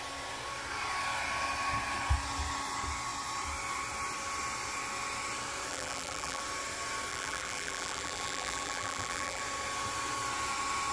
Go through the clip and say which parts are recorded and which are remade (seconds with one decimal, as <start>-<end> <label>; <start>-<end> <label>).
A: 0.0-5.7 recorded; 5.7-6.4 remade; 6.4-7.1 recorded; 7.1-9.4 remade; 9.4-10.9 recorded